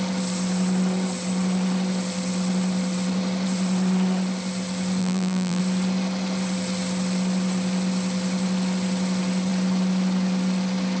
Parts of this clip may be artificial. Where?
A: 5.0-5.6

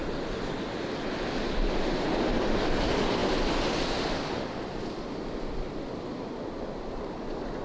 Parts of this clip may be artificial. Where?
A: none

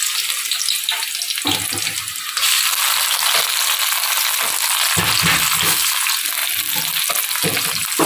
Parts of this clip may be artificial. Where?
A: none